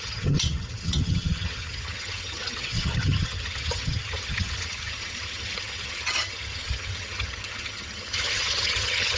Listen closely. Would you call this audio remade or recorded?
remade